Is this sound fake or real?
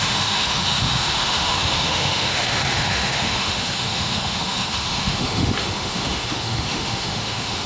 fake